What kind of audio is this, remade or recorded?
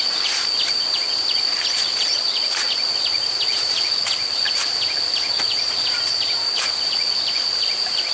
recorded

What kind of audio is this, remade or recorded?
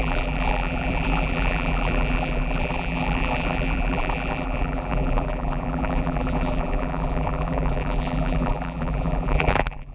remade